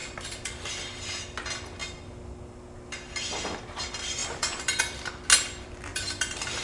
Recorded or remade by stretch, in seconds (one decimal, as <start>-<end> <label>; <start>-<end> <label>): 0.0-0.7 remade; 0.7-4.2 recorded; 4.2-4.8 remade; 4.8-5.9 recorded; 5.9-6.6 remade